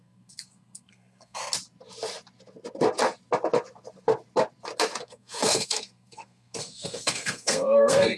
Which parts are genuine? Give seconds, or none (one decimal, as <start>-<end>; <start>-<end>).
1.4-5.0